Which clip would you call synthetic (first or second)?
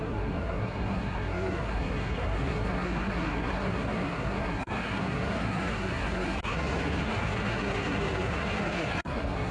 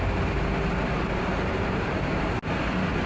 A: first